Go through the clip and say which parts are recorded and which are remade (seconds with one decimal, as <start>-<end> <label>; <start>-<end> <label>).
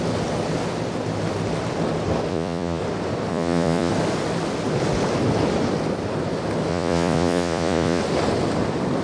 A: 0.0-2.3 recorded; 2.3-2.8 remade; 2.8-3.3 recorded; 3.3-3.9 remade; 3.9-6.7 recorded; 6.7-8.0 remade; 8.0-9.0 recorded